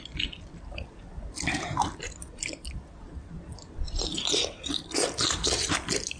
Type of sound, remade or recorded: remade